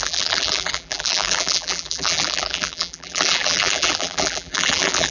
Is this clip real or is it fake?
fake